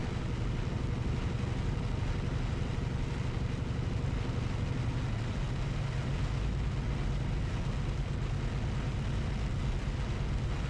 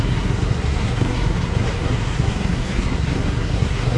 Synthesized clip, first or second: second